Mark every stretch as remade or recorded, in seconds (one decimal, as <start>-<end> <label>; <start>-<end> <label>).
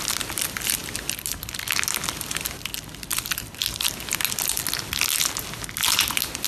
0.0-6.5 recorded